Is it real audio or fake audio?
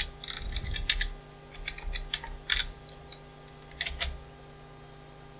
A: real